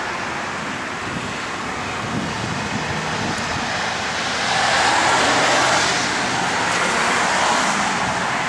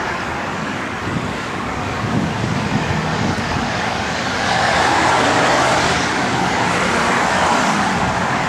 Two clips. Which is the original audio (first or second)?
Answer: first